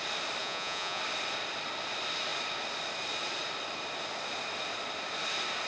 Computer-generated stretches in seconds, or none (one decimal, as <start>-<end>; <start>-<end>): 0.4-1.0